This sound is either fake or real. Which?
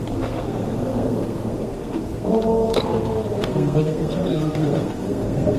fake